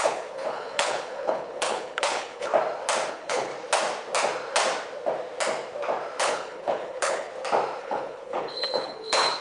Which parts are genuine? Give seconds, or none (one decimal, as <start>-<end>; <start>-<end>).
2.5-3.1; 3.5-6.2; 7.3-7.8